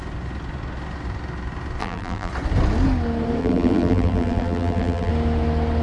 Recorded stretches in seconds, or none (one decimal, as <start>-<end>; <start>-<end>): 0.0-1.8; 2.3-3.4; 5.1-5.8